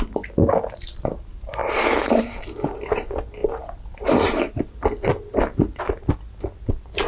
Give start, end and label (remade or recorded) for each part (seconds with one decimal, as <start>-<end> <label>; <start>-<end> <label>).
0.0-7.1 recorded